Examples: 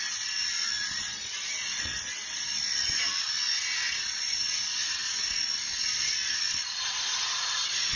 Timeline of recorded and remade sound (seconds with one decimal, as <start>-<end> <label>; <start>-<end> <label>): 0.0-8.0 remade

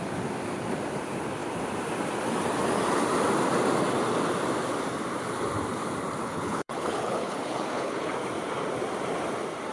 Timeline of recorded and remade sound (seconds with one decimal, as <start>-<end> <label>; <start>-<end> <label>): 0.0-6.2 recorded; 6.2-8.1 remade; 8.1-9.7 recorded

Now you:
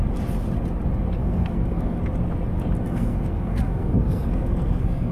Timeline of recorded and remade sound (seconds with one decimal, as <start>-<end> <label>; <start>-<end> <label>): 0.0-1.2 recorded; 1.2-2.0 remade; 2.0-2.9 recorded; 2.9-5.1 remade

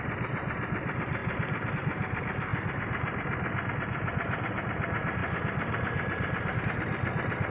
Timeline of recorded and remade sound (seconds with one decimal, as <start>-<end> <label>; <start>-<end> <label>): 0.0-7.5 recorded

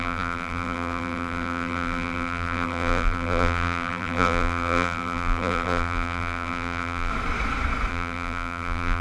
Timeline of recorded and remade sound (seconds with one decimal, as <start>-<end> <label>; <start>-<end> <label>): 0.0-7.1 remade; 7.1-7.9 recorded; 7.9-9.0 remade